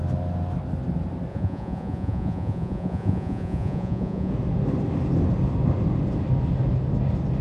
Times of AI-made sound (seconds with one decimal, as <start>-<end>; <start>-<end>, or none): 1.3-4.3